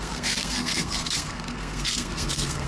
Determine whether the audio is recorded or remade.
remade